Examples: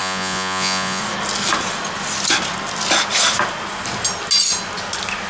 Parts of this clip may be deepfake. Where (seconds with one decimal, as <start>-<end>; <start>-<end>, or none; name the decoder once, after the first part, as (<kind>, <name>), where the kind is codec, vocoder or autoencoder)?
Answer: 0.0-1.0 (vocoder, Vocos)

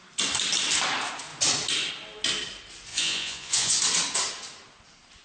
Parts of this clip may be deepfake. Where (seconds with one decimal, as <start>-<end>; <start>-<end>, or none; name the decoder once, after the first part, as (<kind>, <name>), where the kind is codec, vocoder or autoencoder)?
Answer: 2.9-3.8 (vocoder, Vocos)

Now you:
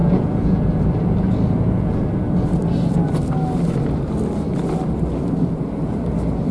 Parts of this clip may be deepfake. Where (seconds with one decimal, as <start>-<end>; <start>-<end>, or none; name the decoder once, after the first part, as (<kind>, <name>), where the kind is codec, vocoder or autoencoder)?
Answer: 0.0-0.7 (vocoder, Vocos)

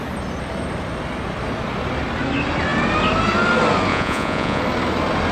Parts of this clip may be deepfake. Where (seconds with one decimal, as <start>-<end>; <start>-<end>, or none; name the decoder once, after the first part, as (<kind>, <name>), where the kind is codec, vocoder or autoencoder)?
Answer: 3.9-4.6 (vocoder, Vocos)